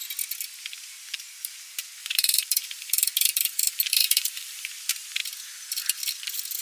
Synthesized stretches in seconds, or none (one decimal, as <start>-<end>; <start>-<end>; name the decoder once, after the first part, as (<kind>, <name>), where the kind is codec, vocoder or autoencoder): 2.0-4.7 (vocoder, BigVGAN v2)